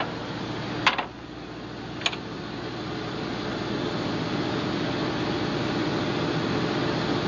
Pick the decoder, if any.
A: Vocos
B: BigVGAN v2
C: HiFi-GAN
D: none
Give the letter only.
D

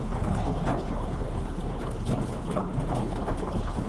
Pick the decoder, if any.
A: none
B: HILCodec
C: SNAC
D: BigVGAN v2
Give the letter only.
B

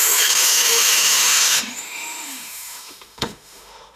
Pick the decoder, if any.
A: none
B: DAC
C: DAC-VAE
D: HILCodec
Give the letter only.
C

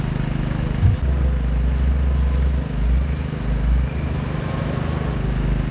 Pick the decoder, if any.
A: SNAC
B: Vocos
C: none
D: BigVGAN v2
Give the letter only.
C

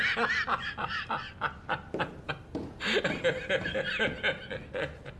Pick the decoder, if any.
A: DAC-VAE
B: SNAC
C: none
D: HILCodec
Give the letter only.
C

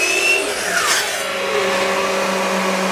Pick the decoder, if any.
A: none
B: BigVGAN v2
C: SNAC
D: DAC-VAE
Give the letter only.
A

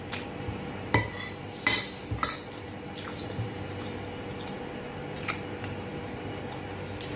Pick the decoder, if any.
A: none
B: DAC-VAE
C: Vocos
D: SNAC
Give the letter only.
A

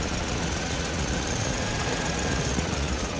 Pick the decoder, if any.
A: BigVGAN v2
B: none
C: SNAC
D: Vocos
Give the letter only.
D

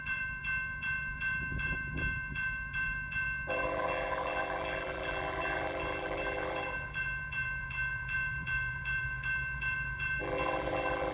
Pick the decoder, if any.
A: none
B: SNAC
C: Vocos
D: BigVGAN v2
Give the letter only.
D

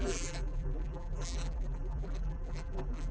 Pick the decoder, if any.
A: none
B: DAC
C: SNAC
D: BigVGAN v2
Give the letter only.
D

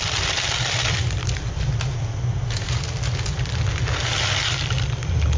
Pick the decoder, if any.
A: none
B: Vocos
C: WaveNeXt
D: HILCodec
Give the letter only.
A